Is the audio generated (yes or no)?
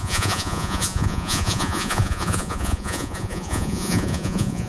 yes